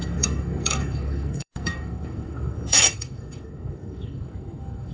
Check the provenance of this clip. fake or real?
fake